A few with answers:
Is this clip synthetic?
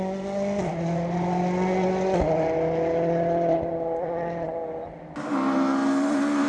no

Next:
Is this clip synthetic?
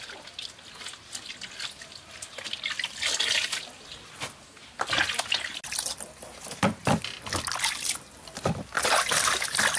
no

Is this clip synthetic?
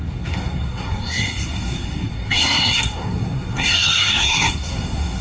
yes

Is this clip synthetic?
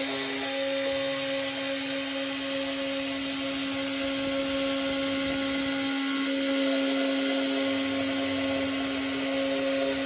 no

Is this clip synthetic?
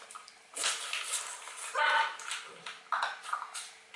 no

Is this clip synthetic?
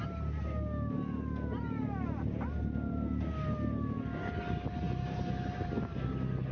no